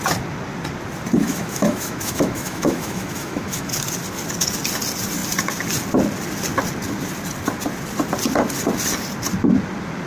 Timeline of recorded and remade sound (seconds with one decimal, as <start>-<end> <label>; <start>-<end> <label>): 0.0-1.2 recorded; 1.2-3.7 remade; 3.7-10.1 recorded